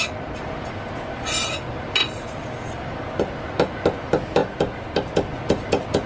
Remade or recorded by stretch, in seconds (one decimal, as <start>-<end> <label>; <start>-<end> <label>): 0.0-6.1 recorded